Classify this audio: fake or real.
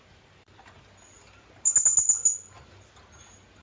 real